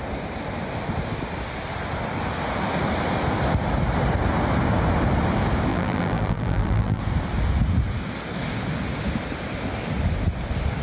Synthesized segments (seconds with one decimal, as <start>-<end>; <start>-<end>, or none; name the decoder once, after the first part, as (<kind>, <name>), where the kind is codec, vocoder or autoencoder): 5.7-7.0 (vocoder, BigVGAN v2)